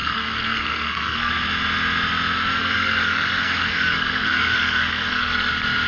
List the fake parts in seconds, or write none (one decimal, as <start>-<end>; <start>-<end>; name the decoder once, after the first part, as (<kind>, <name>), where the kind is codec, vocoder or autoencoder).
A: 0.0-1.3 (codec, SNAC); 2.6-5.5